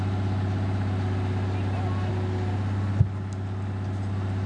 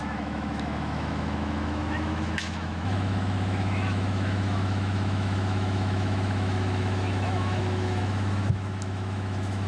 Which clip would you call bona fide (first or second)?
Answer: first